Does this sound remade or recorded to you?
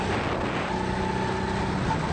recorded